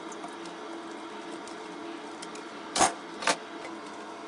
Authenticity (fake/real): real